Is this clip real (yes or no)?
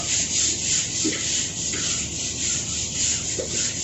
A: yes